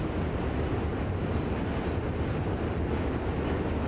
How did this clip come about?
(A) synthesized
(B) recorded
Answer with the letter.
B